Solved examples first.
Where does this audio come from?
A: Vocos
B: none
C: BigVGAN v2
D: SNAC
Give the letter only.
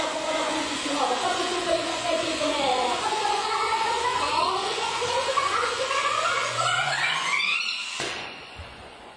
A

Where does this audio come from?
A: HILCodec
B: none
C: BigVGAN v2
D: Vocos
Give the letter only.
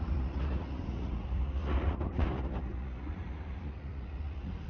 D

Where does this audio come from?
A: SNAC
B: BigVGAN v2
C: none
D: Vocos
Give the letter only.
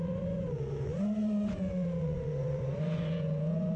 D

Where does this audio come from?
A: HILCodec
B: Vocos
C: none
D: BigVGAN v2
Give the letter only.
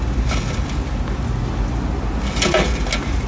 C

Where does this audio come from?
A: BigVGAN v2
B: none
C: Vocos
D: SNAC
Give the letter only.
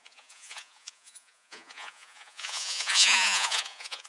C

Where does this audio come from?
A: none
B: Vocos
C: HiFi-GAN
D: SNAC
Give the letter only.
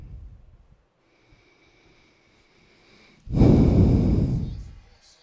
A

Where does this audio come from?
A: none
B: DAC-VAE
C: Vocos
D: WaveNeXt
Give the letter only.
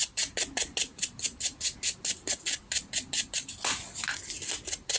A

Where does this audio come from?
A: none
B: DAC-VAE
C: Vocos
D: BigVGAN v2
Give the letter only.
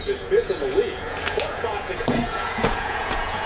C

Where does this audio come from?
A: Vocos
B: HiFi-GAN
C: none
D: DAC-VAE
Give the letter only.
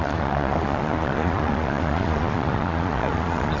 A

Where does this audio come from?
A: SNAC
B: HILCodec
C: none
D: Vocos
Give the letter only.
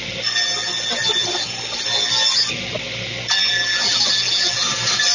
C